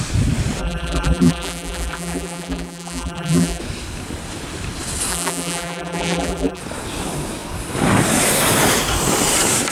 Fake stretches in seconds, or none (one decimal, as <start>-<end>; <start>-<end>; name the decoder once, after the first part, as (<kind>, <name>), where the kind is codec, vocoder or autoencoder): 0.6-3.6 (vocoder, BigVGAN v2); 5.1-6.6